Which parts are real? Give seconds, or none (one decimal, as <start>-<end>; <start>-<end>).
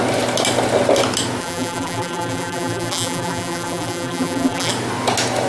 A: 0.0-1.4; 4.7-5.5